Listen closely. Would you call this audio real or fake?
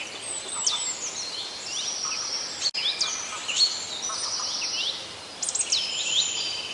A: real